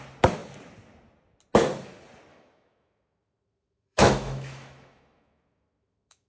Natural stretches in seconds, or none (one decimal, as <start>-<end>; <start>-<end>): 0.0-2.3

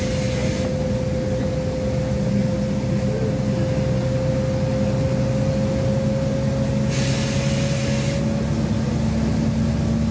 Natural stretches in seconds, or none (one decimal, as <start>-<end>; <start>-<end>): 0.0-10.1

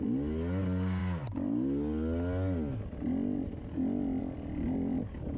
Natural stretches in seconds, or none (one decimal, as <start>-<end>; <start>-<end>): 0.0-5.4

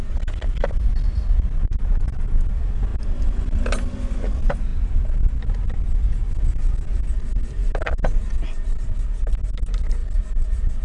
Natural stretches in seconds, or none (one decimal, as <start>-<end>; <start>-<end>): 0.0-10.8